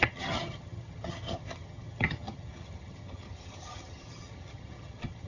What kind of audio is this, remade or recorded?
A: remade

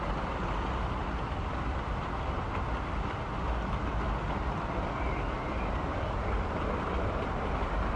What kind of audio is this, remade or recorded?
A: recorded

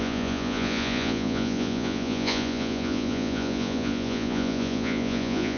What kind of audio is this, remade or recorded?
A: remade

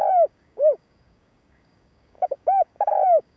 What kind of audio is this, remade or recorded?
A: remade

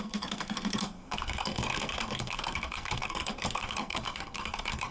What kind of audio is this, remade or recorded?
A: remade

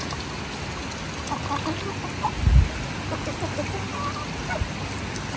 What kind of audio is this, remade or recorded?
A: recorded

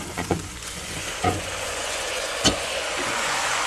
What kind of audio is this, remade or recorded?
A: remade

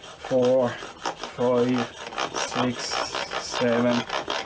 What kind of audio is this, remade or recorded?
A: recorded